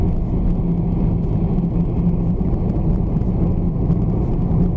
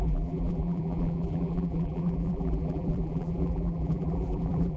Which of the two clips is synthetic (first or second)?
second